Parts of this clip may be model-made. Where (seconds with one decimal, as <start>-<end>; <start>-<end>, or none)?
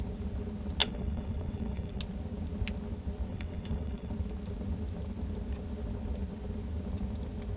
0.8-2.0; 3.3-4.1